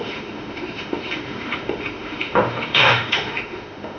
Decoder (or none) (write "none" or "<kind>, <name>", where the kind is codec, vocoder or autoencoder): autoencoder, DAC-VAE